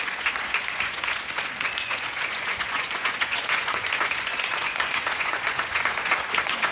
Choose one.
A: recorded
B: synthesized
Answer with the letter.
B